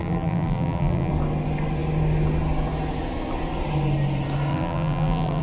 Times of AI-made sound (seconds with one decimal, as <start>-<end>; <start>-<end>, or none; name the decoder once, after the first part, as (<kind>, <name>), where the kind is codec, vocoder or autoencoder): 0.0-1.1 (vocoder, BigVGAN v2); 4.5-5.4